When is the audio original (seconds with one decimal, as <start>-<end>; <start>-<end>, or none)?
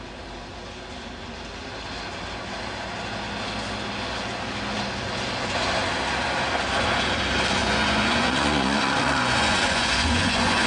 0.0-7.6